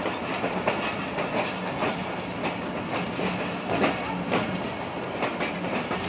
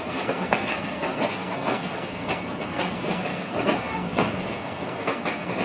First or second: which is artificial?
second